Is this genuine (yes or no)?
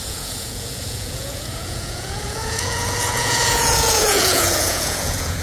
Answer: no